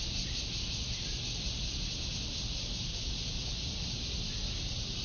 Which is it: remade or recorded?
recorded